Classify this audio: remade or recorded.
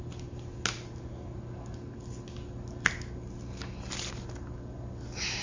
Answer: recorded